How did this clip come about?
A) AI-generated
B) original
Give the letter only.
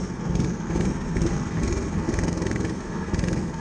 A